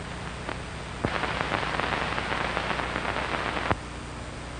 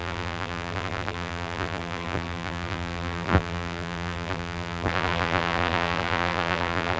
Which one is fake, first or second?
second